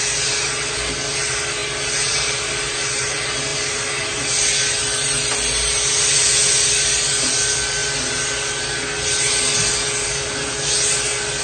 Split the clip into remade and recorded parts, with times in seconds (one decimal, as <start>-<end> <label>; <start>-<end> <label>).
0.0-11.4 recorded